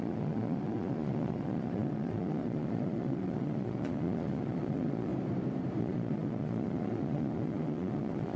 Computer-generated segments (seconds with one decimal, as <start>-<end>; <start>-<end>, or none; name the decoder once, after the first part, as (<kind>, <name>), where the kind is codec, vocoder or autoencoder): 0.0-5.1 (vocoder, Vocos); 5.8-8.4